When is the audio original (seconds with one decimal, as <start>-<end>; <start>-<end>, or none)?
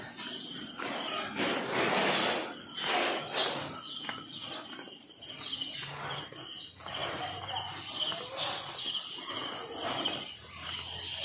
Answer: 0.0-11.2